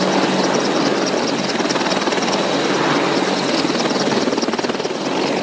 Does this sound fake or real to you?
real